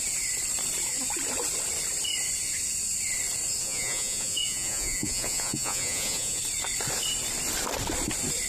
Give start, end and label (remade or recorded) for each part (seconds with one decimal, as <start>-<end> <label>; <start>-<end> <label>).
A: 0.0-3.6 recorded; 3.6-6.4 remade; 6.4-8.5 recorded